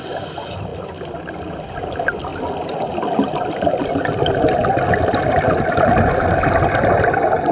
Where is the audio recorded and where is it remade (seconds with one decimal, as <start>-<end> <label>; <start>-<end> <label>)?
0.0-7.5 recorded